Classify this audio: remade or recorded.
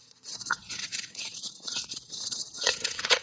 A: remade